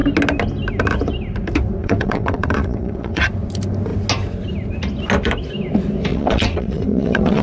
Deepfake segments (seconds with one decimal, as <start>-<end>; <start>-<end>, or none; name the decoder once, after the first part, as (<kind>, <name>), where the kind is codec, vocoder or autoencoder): 1.8-3.2 (vocoder, WaveNeXt); 6.1-7.4